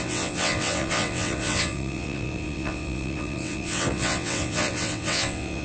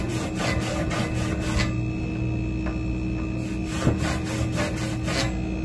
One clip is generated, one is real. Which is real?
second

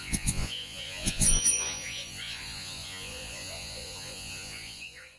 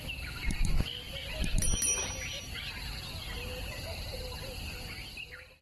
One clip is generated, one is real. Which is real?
second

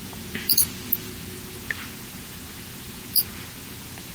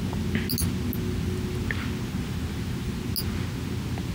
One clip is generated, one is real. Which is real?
second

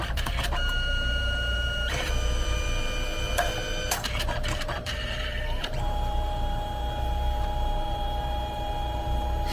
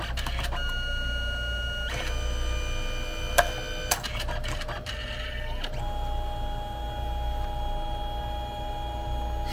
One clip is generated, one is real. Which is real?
second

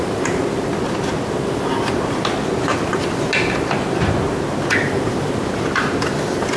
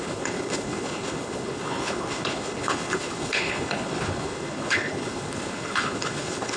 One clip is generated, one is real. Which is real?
first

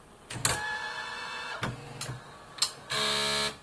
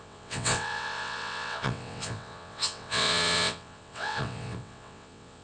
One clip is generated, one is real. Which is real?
first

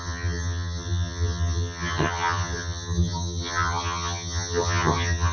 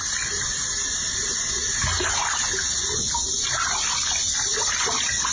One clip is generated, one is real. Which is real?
second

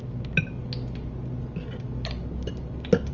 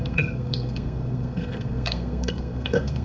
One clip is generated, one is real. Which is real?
first